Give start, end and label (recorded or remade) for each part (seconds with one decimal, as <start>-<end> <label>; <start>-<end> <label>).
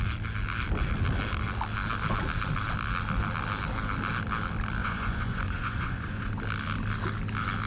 0.0-4.8 recorded; 4.8-6.3 remade; 6.3-7.7 recorded